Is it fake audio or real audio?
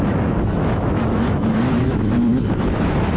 fake